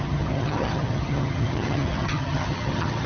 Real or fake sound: fake